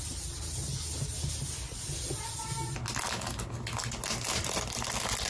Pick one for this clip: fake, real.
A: real